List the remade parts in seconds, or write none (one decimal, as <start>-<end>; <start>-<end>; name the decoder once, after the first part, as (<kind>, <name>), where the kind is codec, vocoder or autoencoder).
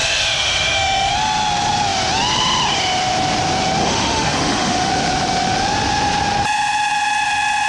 0.0-1.1 (autoencoder, DAC-VAE); 3.8-4.9